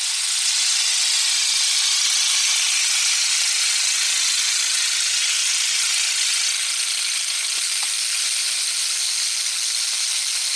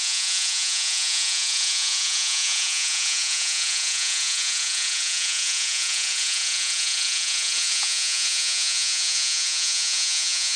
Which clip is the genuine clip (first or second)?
first